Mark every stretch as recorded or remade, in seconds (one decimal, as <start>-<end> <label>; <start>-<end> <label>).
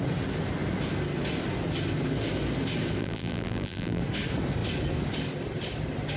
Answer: 0.0-3.0 recorded; 3.0-4.0 remade; 4.0-6.2 recorded